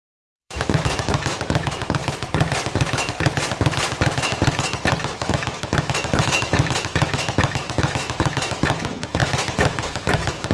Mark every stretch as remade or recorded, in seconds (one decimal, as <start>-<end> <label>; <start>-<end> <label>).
0.0-2.0 remade; 2.0-5.0 recorded; 5.0-10.5 remade

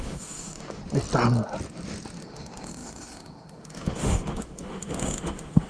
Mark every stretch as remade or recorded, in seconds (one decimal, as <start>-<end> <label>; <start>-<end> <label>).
0.0-0.8 remade; 0.8-2.2 recorded; 2.2-5.7 remade